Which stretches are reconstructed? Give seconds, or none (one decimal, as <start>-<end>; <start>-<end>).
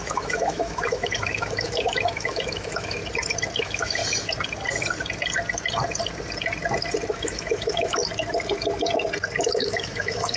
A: 0.0-3.0; 3.6-4.0; 7.1-8.0; 9.4-10.4